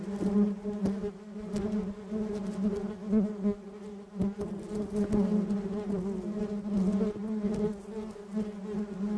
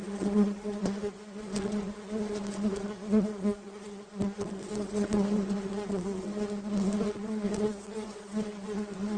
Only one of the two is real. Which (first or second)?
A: first